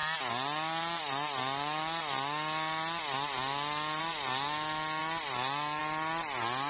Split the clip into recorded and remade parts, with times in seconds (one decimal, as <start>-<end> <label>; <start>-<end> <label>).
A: 0.0-6.7 recorded